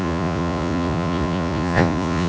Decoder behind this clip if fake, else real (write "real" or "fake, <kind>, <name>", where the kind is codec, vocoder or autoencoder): fake, vocoder, Vocos